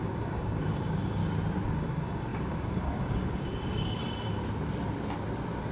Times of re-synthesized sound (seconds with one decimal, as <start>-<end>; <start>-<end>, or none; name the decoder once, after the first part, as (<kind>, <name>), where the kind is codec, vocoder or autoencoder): 0.0-1.2 (codec, DAC); 1.7-4.0